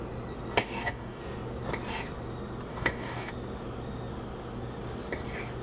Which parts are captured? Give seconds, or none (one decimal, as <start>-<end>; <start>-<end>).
0.0-0.6; 1.2-2.7; 3.3-5.6